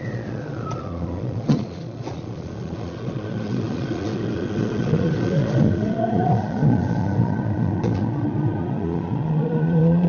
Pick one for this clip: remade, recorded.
remade